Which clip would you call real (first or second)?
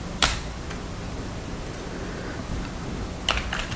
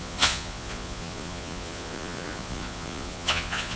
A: first